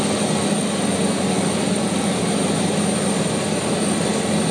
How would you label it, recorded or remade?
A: recorded